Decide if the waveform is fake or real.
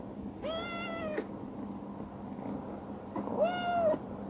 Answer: real